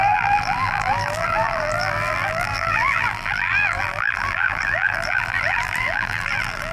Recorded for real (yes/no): no